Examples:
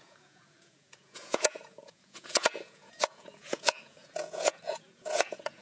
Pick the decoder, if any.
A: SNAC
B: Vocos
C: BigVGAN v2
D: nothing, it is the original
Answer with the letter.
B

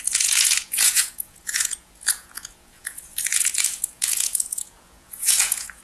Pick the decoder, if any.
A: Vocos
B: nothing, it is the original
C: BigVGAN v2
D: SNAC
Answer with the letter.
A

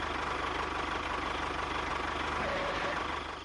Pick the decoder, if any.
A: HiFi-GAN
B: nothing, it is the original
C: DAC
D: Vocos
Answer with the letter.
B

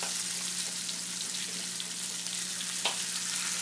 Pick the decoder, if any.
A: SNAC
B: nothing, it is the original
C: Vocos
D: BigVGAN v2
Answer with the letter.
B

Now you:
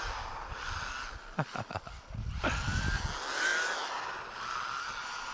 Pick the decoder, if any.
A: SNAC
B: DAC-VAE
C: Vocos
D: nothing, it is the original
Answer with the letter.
D